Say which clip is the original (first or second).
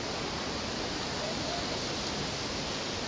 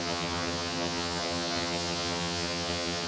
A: first